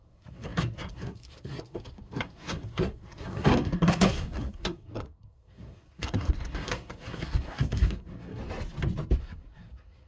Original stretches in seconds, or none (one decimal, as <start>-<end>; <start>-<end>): 8.4-9.2